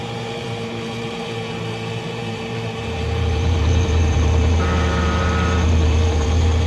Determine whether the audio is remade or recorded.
remade